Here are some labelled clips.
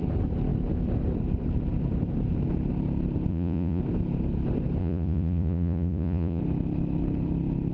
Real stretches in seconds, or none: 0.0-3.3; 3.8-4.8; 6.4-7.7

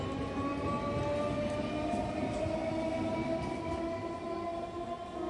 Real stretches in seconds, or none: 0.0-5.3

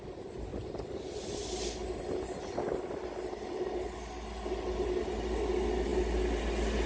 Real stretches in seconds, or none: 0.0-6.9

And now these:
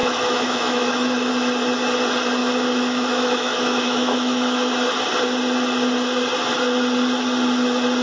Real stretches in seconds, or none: 1.3-2.4; 4.7-8.0

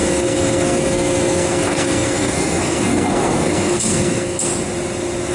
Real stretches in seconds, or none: 4.5-5.3